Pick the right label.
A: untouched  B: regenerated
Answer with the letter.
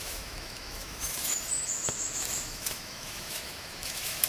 B